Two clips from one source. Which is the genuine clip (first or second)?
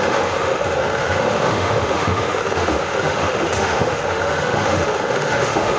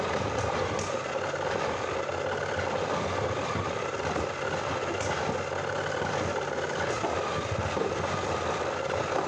second